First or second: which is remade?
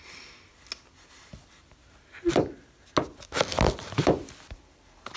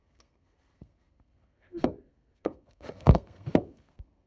second